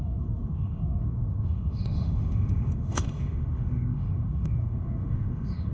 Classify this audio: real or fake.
fake